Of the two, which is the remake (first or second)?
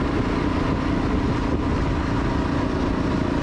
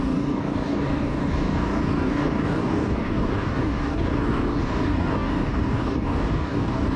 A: second